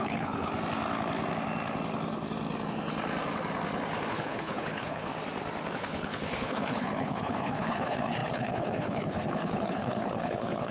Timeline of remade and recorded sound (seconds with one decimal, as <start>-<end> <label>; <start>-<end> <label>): 0.0-0.5 remade; 0.5-4.1 recorded; 4.1-5.1 remade; 5.1-5.7 recorded; 5.7-10.7 remade